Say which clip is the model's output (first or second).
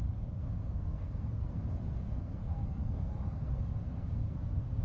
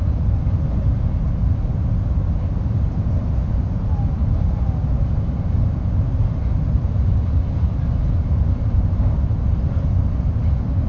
first